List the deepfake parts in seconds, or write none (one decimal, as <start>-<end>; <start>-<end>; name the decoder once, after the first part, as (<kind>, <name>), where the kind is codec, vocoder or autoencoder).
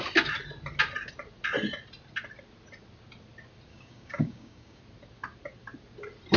3.7-4.8 (codec, DAC)